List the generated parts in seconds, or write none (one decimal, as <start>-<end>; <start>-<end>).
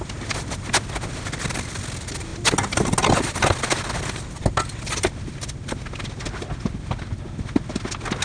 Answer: none